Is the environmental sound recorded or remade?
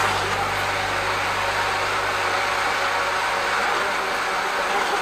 recorded